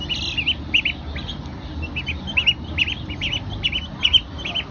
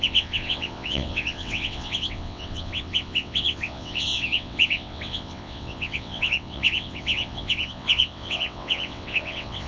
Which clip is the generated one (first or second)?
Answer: second